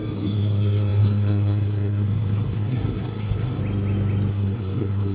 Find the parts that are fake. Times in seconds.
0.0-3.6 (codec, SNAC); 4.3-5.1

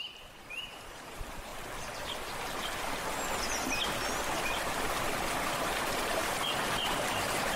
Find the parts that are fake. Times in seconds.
0.0-1.5 (vocoder, BigVGAN v2); 5.2-7.6

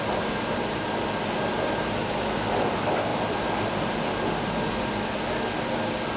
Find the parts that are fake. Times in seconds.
none

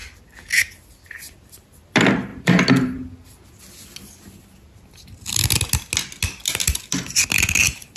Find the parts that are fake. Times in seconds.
none

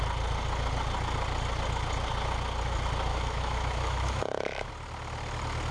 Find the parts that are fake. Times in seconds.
3.1-4.7 (autoencoder, DAC-VAE)

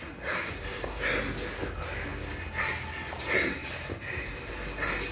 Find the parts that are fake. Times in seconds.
3.6-4.5 (vocoder, BigVGAN v2)

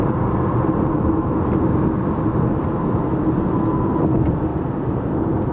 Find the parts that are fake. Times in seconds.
none

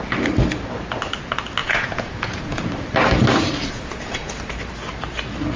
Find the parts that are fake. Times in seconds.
1.6-2.6 (vocoder, Vocos); 3.6-4.3